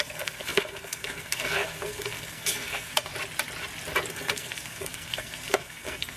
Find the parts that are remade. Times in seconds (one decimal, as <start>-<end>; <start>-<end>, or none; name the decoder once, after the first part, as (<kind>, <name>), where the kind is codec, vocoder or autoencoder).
0.0-3.1 (codec, SNAC); 4.1-6.2